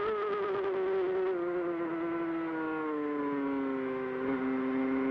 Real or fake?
real